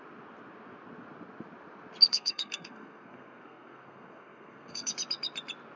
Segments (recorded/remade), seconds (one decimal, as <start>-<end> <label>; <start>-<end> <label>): 0.0-2.1 recorded; 2.1-4.9 remade; 4.9-5.8 recorded

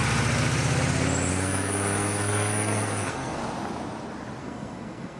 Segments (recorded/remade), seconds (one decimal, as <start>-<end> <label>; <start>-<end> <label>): 0.0-1.3 recorded; 1.3-3.4 remade; 3.4-4.4 recorded; 4.4-5.2 remade

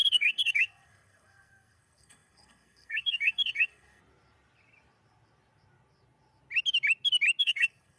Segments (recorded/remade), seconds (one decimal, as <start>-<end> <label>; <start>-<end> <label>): 0.0-4.0 remade; 4.0-7.4 recorded; 7.4-8.0 remade

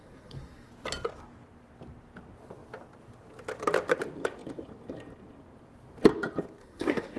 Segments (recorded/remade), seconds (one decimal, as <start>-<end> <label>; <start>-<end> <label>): 0.0-0.7 remade; 0.7-6.6 recorded; 6.6-7.2 remade

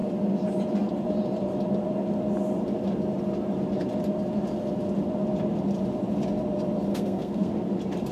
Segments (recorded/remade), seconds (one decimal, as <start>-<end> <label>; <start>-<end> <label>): 0.0-6.9 recorded; 6.9-7.5 remade; 7.5-8.1 recorded

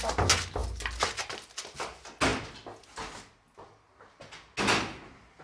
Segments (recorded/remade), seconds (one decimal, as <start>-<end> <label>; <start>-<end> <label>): 0.0-5.4 recorded

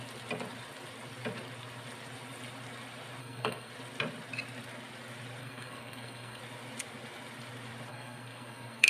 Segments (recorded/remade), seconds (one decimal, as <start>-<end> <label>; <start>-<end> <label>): 0.0-3.2 recorded; 3.2-3.7 remade; 3.7-5.4 recorded; 5.4-6.4 remade; 6.4-7.9 recorded; 7.9-8.9 remade

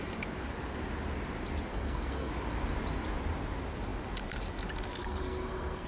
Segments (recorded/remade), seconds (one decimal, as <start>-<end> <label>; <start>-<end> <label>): 0.0-1.7 recorded; 1.7-2.3 remade; 2.3-5.0 recorded; 5.0-5.9 remade